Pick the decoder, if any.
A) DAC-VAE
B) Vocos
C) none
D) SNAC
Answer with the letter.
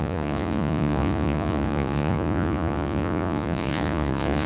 B